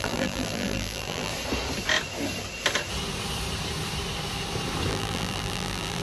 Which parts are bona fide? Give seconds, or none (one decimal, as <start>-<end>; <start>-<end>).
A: 1.3-4.9